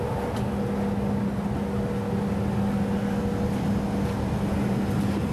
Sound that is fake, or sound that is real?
real